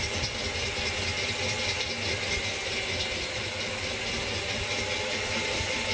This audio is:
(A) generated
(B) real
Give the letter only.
B